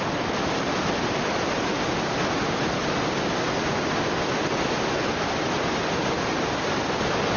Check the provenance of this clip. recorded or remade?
recorded